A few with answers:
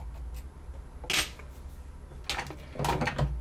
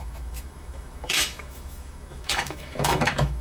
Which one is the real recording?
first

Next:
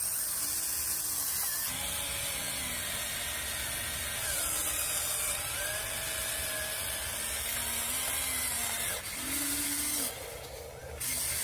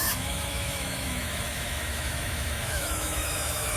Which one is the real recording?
first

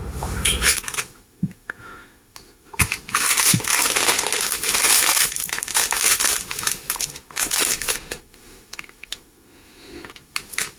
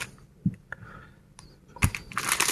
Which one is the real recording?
second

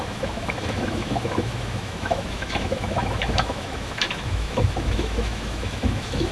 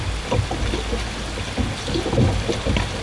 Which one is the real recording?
second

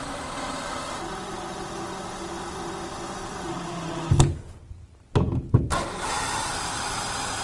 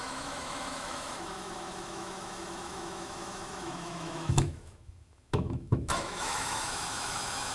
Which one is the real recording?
first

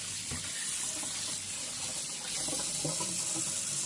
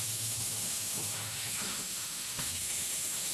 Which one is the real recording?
first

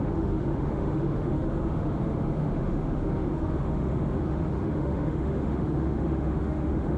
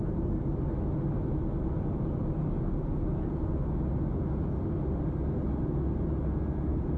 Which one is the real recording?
second